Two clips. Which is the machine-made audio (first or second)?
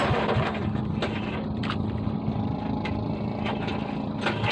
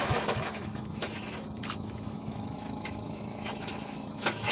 second